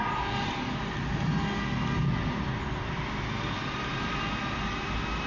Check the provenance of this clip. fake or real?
real